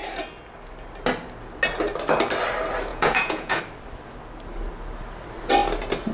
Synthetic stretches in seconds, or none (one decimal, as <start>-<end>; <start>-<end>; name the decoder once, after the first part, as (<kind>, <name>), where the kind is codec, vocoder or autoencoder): 2.9-3.6 (vocoder, Vocos)